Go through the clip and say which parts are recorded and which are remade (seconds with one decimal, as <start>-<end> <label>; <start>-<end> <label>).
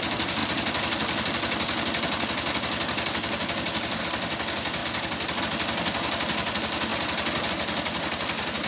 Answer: 0.0-8.7 recorded